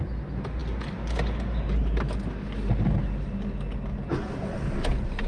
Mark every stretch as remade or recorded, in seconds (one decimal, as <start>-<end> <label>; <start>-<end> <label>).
0.0-5.3 recorded